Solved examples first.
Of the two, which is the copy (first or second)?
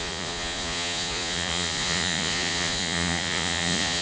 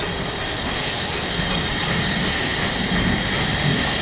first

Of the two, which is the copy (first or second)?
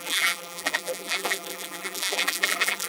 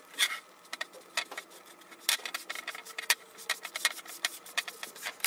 first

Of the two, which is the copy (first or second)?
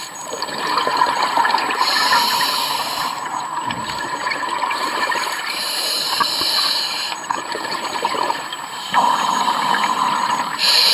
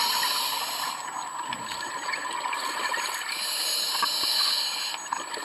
first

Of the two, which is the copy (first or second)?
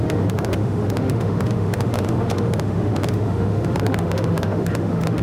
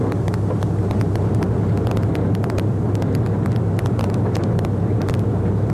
first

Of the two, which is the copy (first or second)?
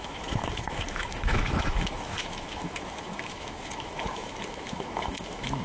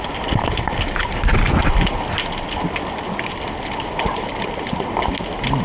first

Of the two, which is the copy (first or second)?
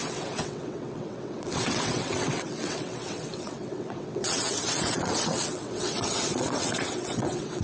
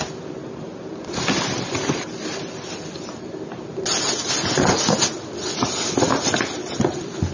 first